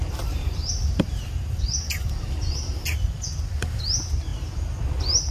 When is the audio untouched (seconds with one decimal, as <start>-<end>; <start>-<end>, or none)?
2.4-5.3